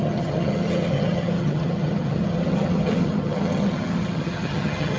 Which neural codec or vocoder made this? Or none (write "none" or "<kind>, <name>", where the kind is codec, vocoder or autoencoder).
vocoder, HiFi-GAN